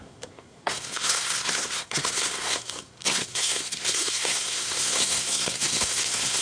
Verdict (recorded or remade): remade